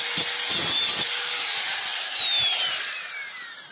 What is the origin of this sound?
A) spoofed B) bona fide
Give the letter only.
B